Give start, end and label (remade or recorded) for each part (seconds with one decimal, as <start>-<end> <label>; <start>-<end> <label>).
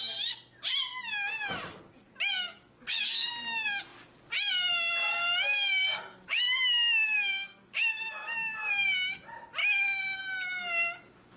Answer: 0.0-2.5 recorded; 2.5-3.3 remade; 3.3-5.0 recorded; 5.0-8.7 remade; 8.7-9.6 recorded; 9.6-10.2 remade; 10.2-11.4 recorded